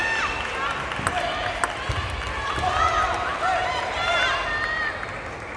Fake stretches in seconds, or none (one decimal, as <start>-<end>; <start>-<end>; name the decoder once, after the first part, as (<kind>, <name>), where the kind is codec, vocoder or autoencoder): 3.3-3.9 (vocoder, BigVGAN v2)